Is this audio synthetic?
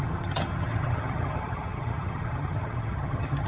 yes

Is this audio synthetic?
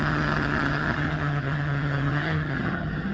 yes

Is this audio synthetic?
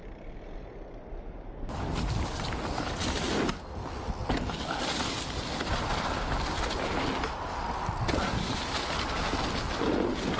no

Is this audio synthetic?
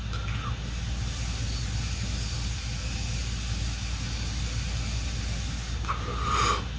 no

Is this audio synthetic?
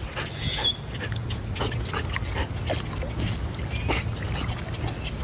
no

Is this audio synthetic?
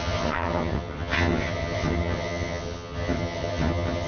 yes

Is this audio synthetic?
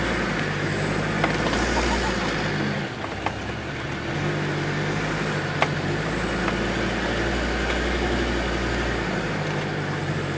no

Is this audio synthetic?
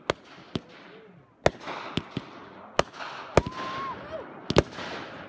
no